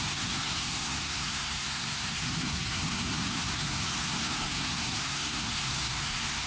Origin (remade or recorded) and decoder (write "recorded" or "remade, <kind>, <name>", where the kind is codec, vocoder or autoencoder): remade, codec, SNAC